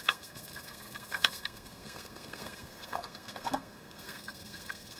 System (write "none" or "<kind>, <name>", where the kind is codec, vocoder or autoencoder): codec, SNAC